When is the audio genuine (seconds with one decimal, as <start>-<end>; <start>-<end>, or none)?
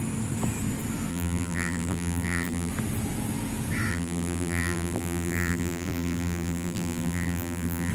0.0-1.1; 2.7-3.9